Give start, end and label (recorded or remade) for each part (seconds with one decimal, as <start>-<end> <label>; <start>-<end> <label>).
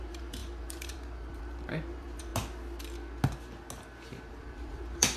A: 0.0-2.3 remade; 2.3-4.3 recorded; 4.3-5.2 remade